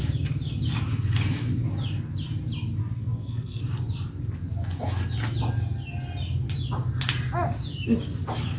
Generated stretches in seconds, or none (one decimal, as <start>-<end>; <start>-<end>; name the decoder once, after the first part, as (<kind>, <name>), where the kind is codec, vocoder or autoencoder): 2.8-3.6 (codec, SNAC)